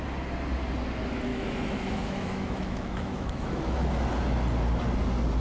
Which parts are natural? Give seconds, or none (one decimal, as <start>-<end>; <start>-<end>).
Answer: 0.0-1.3; 3.8-5.4